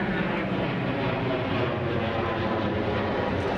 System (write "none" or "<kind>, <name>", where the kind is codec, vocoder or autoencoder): none